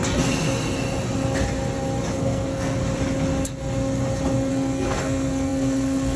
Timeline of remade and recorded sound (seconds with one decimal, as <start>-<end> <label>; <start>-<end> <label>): 0.0-2.1 recorded; 2.1-2.8 remade; 2.8-4.5 recorded; 4.5-6.2 remade